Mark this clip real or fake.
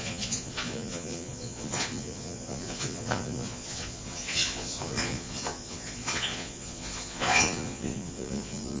fake